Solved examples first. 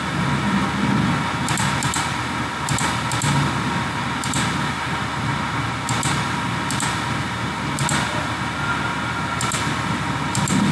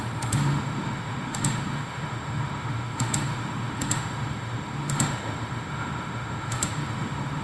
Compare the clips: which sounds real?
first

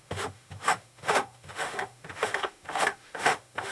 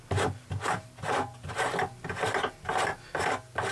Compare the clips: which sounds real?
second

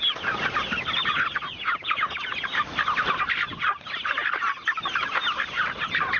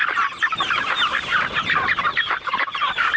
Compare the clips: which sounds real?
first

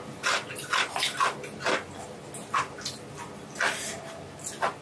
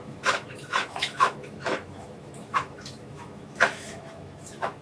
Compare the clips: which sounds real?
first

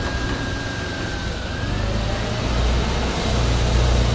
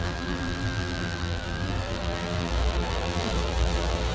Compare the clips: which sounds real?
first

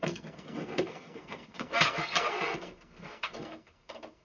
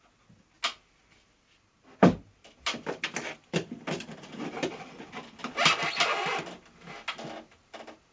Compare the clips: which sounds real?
second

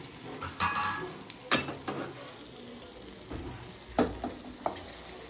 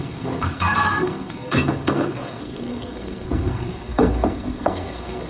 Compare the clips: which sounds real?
first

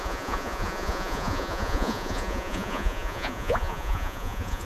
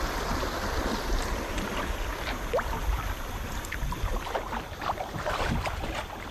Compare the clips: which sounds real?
second